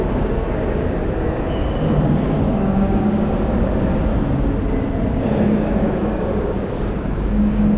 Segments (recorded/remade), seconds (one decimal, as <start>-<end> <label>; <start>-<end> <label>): 0.0-4.1 remade; 4.1-5.2 recorded; 5.2-7.8 remade